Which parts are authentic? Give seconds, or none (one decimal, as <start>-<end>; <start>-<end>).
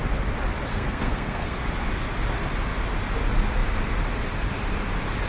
0.0-0.7; 1.6-5.3